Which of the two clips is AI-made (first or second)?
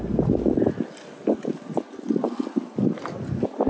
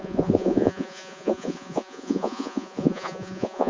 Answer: second